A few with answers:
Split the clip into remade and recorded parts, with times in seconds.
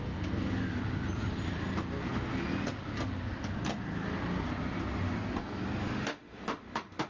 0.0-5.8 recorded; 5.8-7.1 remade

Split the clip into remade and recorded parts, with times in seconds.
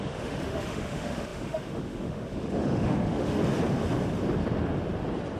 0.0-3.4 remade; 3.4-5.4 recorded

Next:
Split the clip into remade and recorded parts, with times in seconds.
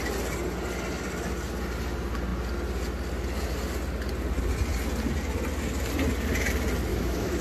0.0-6.9 recorded; 6.9-7.4 remade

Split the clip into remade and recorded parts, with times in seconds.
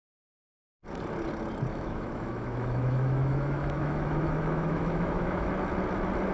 0.0-1.7 recorded; 1.7-5.5 remade; 5.5-6.3 recorded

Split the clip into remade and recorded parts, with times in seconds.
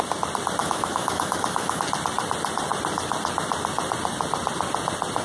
0.0-0.6 recorded; 0.6-1.8 remade; 1.8-5.2 recorded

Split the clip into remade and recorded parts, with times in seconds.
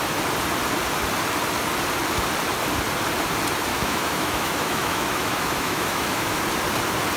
0.0-3.7 recorded; 3.7-6.4 remade; 6.4-7.2 recorded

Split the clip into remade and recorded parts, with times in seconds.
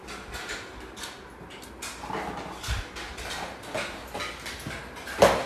0.0-5.5 recorded